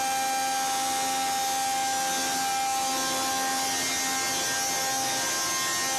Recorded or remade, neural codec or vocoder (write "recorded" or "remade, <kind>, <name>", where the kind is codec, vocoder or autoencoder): recorded